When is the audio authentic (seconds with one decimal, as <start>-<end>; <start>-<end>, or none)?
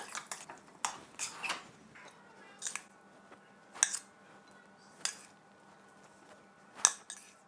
0.0-7.5